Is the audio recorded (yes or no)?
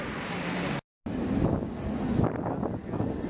yes